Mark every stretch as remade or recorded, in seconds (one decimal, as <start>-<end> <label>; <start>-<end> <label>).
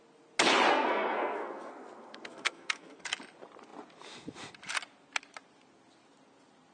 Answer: 0.0-0.7 recorded; 0.7-3.0 remade; 3.0-6.7 recorded